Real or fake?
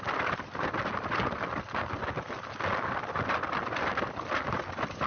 real